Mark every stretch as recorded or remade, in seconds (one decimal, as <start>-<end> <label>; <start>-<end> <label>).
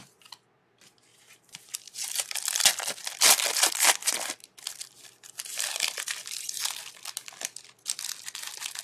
0.0-1.1 recorded; 1.1-2.7 remade; 2.7-4.0 recorded; 4.0-6.6 remade; 6.6-8.8 recorded